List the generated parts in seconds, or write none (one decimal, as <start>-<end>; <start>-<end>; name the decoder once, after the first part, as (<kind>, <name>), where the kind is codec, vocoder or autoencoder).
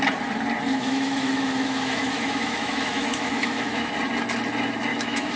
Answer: 0.7-3.9 (autoencoder, DAC-VAE); 4.9-5.4